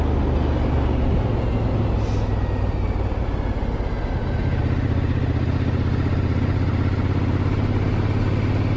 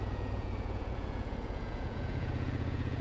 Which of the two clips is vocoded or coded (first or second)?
second